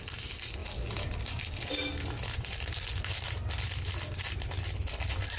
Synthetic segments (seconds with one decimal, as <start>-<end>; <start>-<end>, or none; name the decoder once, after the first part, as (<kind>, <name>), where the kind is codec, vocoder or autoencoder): none